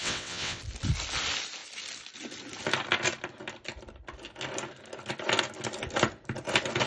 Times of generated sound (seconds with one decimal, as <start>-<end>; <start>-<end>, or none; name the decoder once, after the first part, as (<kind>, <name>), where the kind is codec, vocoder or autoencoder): 0.0-0.6 (vocoder, WaveNeXt)